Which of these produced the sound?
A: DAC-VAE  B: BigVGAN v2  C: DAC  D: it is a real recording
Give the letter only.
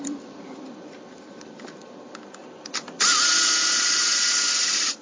B